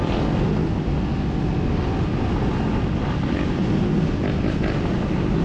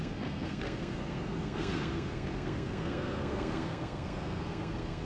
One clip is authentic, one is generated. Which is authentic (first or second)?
first